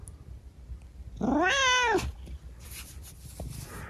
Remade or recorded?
recorded